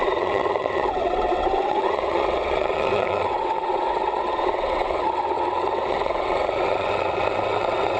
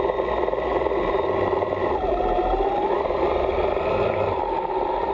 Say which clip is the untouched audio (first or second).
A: second